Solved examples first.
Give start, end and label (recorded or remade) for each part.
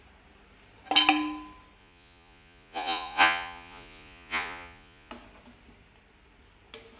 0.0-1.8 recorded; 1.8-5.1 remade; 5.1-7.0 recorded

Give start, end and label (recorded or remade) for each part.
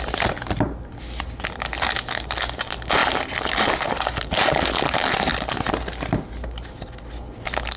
0.0-7.8 recorded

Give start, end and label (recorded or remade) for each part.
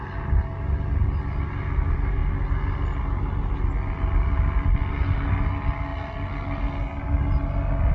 0.0-7.9 recorded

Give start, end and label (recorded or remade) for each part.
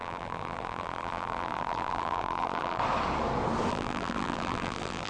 0.0-2.8 remade; 2.8-3.7 recorded; 3.7-5.1 remade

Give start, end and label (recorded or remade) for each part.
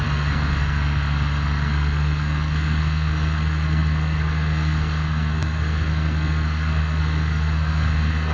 0.0-8.3 remade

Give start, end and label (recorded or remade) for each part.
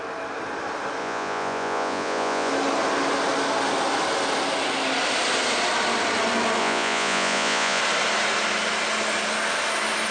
0.0-1.0 recorded; 1.0-2.5 remade; 2.5-6.6 recorded; 6.6-7.8 remade; 7.8-10.1 recorded